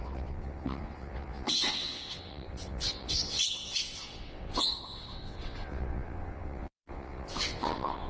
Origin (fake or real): fake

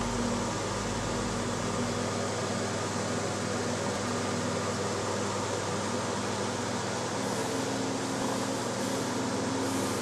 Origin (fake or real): real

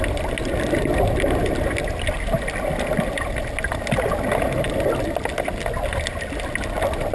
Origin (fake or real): real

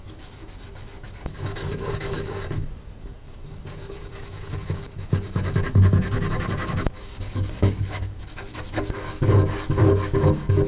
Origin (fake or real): fake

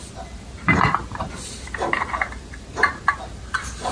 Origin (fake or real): real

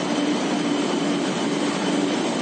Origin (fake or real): fake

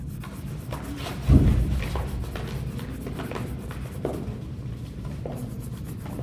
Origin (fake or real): real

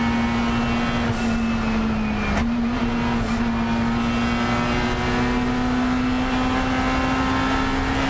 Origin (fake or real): real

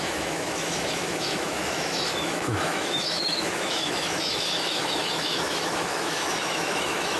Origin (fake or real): fake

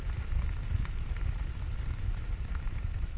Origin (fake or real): real